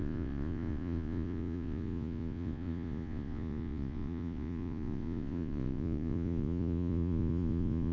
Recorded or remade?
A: remade